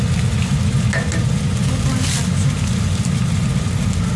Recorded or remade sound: recorded